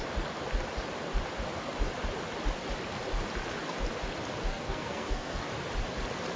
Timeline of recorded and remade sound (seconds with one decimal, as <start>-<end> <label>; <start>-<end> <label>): 0.0-4.5 recorded; 4.5-5.5 remade; 5.5-6.4 recorded